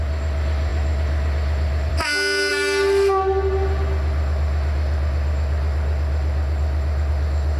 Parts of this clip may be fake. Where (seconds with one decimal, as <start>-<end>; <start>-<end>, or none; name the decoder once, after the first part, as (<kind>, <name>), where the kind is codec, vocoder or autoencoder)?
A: none